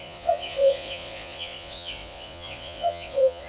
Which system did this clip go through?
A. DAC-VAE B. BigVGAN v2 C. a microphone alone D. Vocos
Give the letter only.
D